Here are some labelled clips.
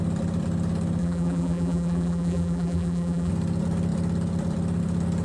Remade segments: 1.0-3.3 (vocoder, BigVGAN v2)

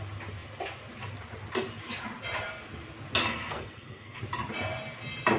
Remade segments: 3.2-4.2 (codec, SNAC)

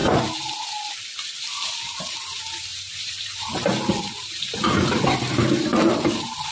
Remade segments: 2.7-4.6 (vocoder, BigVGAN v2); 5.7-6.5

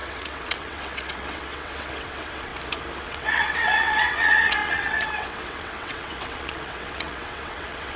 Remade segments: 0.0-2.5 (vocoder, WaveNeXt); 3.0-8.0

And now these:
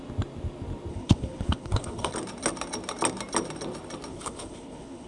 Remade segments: 0.9-2.1 (codec, HILCodec); 4.1-5.1